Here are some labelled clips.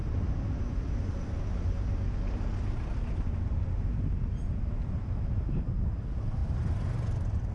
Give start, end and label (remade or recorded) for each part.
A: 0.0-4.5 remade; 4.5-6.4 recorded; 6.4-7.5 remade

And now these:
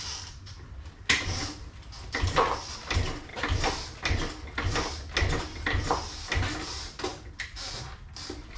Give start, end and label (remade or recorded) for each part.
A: 0.0-7.1 recorded; 7.1-7.8 remade; 7.8-8.6 recorded

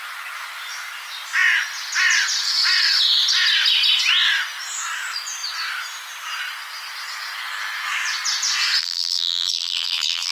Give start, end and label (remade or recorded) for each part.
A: 0.0-8.8 recorded; 8.8-10.3 remade

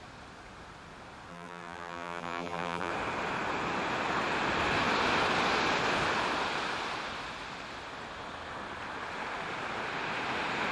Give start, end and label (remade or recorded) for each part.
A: 0.0-1.3 recorded; 1.3-2.9 remade; 2.9-10.7 recorded

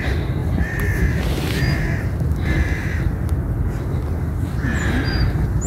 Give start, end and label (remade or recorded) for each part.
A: 0.0-5.7 recorded